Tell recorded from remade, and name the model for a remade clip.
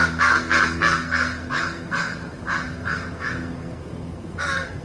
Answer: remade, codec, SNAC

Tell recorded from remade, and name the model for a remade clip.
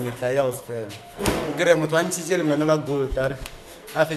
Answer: remade, codec, SNAC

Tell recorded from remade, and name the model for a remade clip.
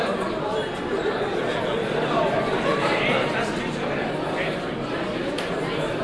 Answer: recorded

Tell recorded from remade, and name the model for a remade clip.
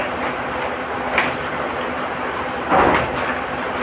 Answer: recorded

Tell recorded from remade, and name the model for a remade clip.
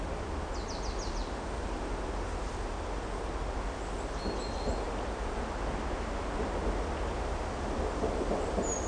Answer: recorded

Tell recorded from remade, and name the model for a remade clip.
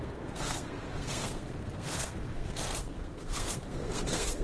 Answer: remade, codec, SNAC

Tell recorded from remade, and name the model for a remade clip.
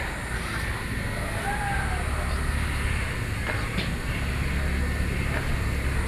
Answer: recorded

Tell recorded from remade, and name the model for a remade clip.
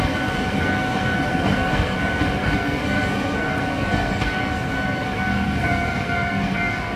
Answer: remade, codec, SNAC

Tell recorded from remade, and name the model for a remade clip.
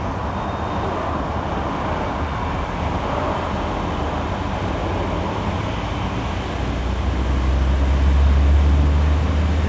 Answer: recorded